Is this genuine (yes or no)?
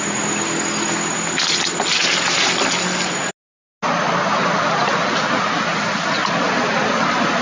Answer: yes